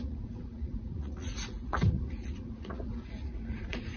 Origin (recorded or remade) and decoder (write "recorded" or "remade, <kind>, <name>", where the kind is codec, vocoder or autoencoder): remade, vocoder, Vocos